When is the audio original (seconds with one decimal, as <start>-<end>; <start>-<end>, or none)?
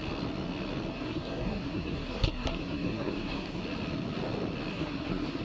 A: 0.0-0.9; 3.6-4.7